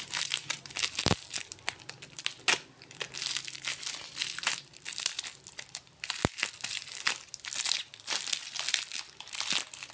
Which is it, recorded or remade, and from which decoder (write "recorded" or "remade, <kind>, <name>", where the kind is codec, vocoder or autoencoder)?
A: recorded